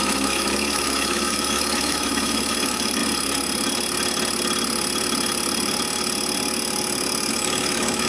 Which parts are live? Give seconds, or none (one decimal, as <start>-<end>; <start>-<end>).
3.0-7.3